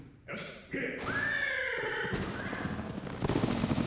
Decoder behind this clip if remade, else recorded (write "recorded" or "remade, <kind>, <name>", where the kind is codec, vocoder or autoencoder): recorded